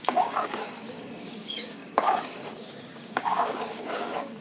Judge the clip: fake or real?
fake